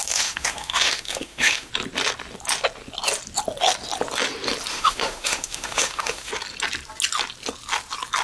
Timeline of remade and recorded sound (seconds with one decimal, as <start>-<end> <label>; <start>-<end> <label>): 0.0-1.7 remade; 1.7-4.7 recorded; 4.7-6.3 remade; 6.3-8.2 recorded

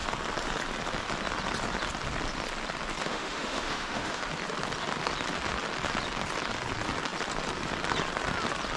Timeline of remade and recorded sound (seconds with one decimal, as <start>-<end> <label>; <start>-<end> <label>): 0.0-3.0 recorded; 3.0-4.2 remade; 4.2-8.8 recorded

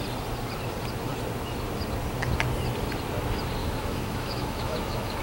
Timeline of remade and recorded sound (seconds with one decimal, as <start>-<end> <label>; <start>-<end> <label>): 0.0-3.6 recorded; 3.6-5.2 remade

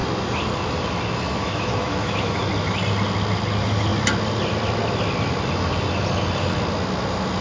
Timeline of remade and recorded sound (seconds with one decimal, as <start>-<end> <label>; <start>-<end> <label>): 0.0-1.3 recorded; 1.3-2.4 remade; 2.4-7.4 recorded

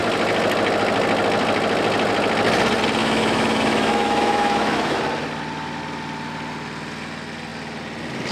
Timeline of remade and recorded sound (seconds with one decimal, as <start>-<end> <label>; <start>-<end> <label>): 0.0-3.0 recorded; 3.0-5.0 remade; 5.0-8.3 recorded

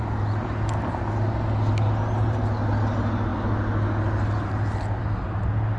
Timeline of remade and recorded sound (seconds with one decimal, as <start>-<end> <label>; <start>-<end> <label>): 0.0-5.8 recorded